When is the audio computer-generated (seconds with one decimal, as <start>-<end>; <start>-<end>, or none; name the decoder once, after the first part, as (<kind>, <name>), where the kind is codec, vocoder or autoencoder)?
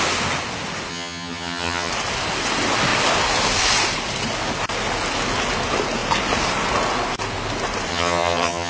0.9-1.9 (vocoder, HiFi-GAN); 7.9-8.7